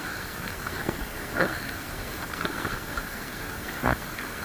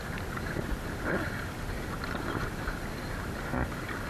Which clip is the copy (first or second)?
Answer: first